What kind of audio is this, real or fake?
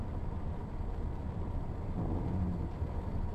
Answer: real